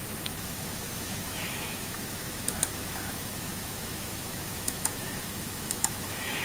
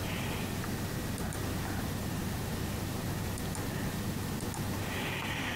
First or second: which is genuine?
second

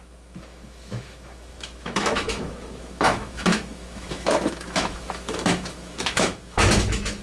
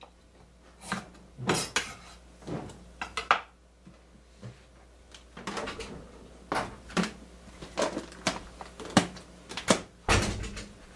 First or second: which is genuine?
second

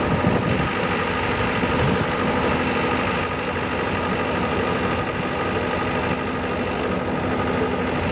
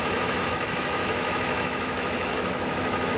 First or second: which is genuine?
first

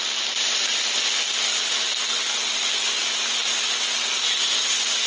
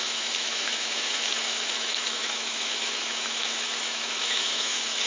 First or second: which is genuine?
first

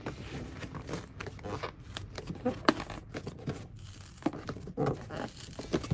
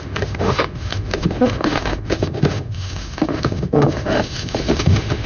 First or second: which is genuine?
first